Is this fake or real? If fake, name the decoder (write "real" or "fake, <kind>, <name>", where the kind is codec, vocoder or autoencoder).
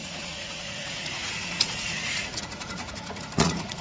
fake, vocoder, Vocos